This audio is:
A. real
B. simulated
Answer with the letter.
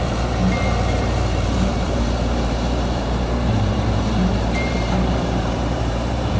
B